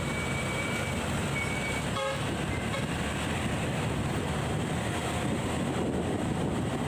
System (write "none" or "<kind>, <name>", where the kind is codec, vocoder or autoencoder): none